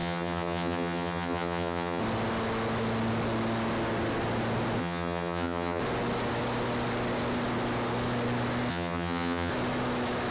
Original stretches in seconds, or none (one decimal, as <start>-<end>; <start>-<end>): 2.0-4.8; 5.8-8.7; 9.5-10.3